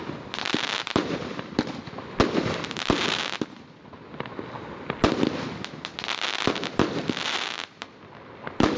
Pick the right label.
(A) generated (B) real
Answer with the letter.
B